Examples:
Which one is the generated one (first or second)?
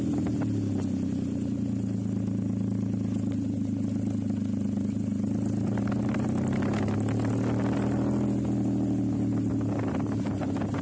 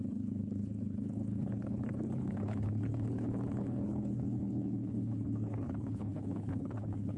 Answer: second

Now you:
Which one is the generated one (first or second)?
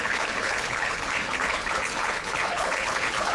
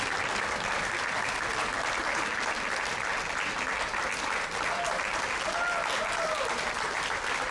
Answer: first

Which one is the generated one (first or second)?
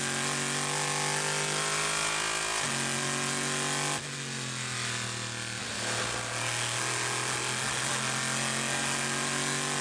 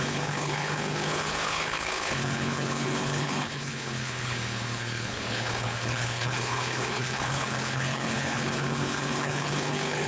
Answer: second